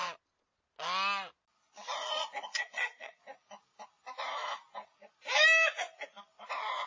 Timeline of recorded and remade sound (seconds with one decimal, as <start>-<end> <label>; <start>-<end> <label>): 0.0-2.5 recorded; 2.5-3.2 remade; 3.2-6.9 recorded